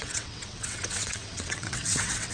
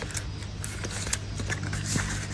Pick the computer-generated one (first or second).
first